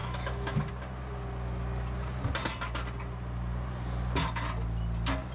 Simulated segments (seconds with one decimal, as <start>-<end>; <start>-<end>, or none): 0.0-0.7